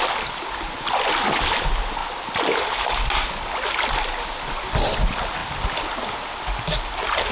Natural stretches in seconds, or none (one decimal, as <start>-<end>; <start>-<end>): 0.0-7.3